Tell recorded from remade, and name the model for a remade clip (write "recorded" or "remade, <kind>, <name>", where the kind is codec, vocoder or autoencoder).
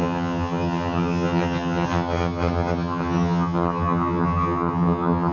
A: remade, vocoder, HiFi-GAN